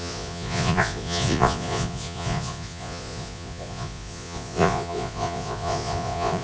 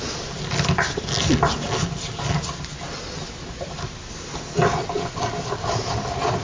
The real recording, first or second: second